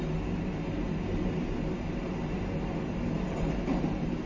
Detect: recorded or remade recorded